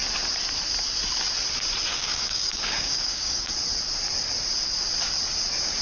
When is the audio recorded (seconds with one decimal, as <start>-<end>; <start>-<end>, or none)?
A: 0.0-1.9; 3.5-5.8